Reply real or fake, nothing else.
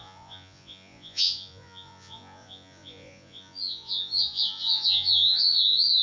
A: fake